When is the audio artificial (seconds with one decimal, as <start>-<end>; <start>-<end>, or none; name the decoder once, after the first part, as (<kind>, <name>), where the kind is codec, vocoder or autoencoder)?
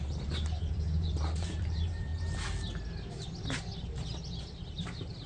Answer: 0.0-2.1 (vocoder, BigVGAN v2); 4.7-5.3